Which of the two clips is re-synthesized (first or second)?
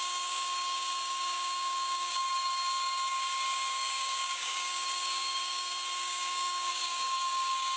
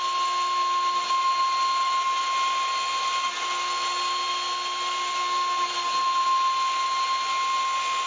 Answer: first